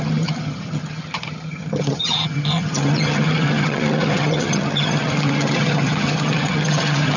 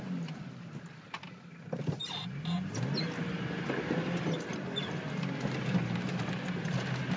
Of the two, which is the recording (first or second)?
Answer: second